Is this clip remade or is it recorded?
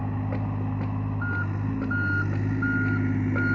recorded